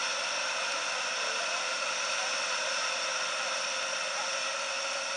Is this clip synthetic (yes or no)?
no